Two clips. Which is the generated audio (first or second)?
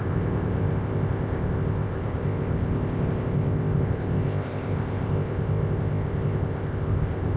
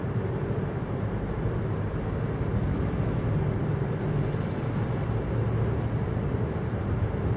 first